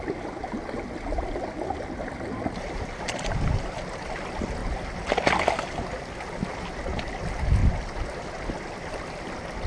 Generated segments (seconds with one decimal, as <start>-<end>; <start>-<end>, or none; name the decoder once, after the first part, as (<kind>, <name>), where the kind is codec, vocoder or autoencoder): none